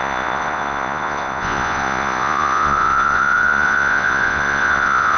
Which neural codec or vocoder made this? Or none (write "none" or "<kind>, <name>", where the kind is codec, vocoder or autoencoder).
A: vocoder, Vocos